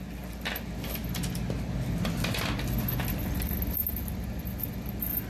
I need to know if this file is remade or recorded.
recorded